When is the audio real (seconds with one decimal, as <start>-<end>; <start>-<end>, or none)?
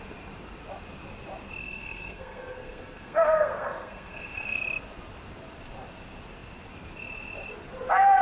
0.0-1.6; 4.6-8.2